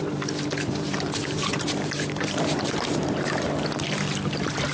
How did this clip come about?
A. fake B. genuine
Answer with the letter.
A